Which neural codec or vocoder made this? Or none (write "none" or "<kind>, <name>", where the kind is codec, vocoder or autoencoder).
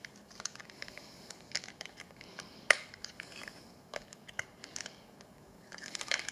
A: codec, DAC